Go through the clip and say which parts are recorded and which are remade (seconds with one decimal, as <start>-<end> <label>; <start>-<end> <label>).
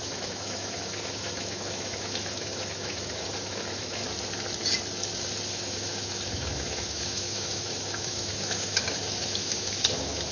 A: 0.0-4.0 remade; 4.0-5.5 recorded; 5.5-10.3 remade